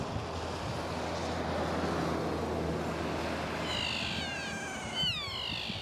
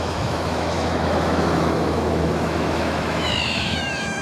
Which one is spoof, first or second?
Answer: second